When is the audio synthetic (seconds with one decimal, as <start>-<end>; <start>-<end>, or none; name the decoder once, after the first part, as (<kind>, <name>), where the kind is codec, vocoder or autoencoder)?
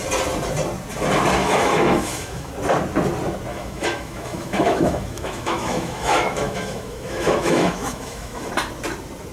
1.4-2.5 (autoencoder, DAC-VAE); 3.5-8.5